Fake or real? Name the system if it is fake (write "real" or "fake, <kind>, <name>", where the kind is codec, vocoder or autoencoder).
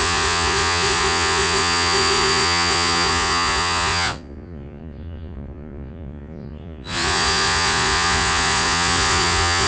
fake, vocoder, Vocos